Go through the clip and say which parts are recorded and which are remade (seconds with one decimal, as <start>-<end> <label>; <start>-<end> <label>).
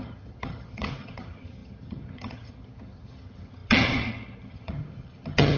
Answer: 0.0-5.6 remade